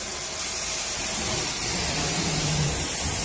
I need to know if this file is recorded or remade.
recorded